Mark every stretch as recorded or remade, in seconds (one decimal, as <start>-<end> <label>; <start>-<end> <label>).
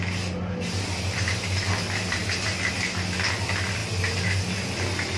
0.0-5.2 recorded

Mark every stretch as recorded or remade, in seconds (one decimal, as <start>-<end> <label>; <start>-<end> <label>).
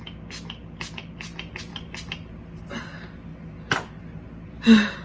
0.0-5.0 recorded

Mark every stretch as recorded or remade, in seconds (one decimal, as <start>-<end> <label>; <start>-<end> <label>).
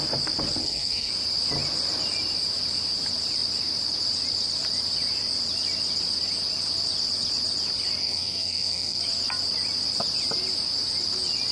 0.0-0.6 recorded; 0.6-1.1 remade; 1.1-8.0 recorded; 8.0-9.0 remade; 9.0-11.5 recorded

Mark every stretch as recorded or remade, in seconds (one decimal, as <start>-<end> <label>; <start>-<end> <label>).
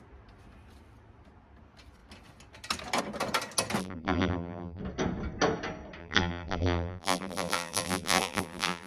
0.0-3.8 recorded; 3.8-4.8 remade; 4.8-6.0 recorded; 6.0-8.9 remade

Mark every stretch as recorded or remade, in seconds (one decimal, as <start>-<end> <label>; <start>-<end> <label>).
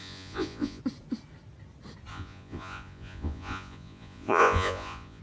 0.0-0.8 remade; 0.8-2.1 recorded; 2.1-5.2 remade